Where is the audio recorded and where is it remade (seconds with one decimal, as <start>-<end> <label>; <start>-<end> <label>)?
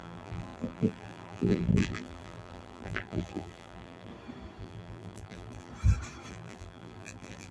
0.0-4.1 remade; 4.1-4.6 recorded; 4.6-5.7 remade; 5.7-6.3 recorded; 6.3-7.5 remade